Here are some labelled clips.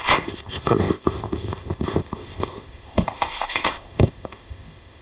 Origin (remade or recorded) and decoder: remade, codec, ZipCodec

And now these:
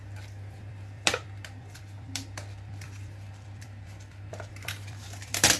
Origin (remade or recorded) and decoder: remade, vocoder, BigVGAN v2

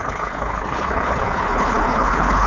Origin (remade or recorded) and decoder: remade, codec, HILCodec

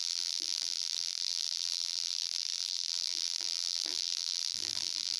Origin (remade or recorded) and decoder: remade, vocoder, BigVGAN v2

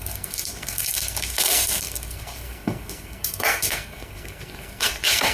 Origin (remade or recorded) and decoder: remade, codec, SNAC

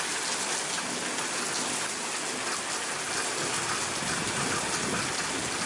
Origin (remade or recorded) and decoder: recorded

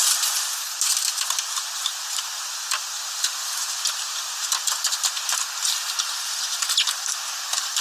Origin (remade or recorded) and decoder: recorded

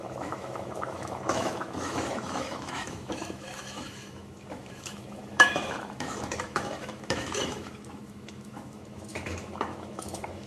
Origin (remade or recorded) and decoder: remade, autoencoder, DAC-VAE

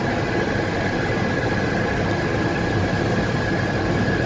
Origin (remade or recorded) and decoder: recorded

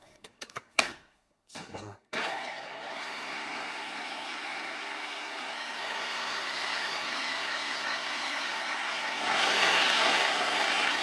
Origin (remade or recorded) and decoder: remade, codec, SNAC